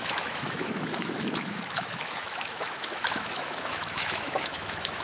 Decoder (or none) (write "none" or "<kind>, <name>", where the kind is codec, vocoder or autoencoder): autoencoder, DAC-VAE